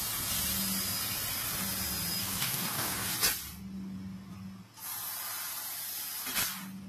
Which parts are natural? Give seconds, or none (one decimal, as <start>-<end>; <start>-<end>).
0.0-2.2; 3.1-6.9